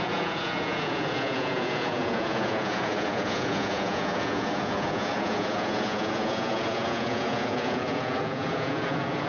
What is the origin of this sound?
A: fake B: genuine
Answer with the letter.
A